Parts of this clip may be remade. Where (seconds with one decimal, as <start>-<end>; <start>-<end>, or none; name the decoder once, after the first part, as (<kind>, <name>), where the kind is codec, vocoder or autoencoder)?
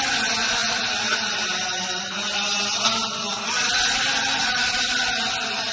none